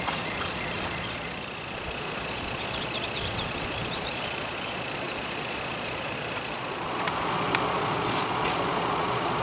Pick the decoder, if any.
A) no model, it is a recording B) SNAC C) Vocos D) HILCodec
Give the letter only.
C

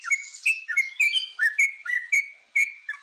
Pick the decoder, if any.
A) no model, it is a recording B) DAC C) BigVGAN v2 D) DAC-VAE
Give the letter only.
B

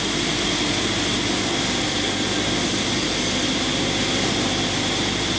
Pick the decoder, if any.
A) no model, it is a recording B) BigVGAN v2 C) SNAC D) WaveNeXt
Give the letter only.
A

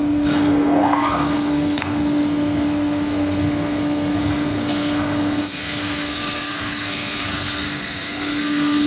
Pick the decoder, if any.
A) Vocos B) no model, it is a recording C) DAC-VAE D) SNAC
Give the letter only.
D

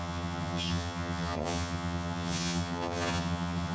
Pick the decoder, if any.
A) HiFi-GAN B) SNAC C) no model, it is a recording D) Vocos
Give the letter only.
A